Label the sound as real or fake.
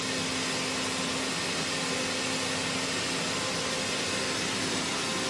real